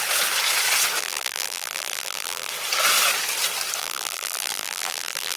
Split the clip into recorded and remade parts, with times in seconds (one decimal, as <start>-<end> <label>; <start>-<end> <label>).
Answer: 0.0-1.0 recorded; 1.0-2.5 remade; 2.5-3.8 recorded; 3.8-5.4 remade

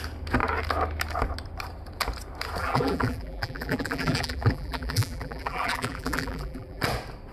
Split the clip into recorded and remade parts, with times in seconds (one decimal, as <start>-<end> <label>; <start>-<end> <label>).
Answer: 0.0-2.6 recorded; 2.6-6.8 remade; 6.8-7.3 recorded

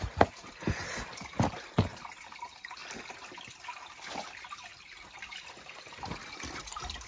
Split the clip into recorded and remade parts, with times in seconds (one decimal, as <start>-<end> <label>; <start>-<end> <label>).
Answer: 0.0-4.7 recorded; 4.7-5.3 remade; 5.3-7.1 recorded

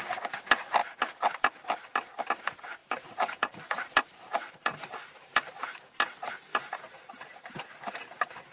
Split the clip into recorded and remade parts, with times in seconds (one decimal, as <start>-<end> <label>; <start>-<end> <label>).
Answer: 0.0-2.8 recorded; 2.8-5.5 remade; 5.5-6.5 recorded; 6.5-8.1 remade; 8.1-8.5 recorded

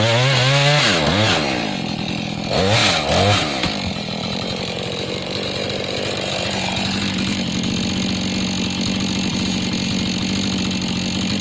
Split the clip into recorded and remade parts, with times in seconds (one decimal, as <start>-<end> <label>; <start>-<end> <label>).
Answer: 0.0-4.2 recorded; 4.2-7.7 remade; 7.7-9.3 recorded; 9.3-9.9 remade; 9.9-11.4 recorded

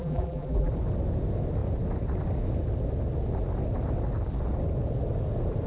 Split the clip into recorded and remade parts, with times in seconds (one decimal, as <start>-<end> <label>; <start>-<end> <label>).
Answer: 0.0-0.7 remade; 0.7-5.7 recorded

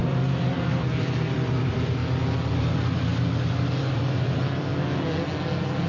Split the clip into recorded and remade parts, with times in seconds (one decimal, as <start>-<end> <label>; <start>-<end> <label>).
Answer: 0.0-2.0 remade; 2.0-2.5 recorded; 2.5-4.7 remade; 4.7-5.9 recorded